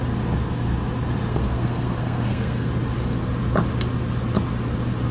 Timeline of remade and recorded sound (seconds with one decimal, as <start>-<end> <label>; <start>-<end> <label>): 0.0-1.3 recorded; 1.3-2.7 remade; 2.7-5.1 recorded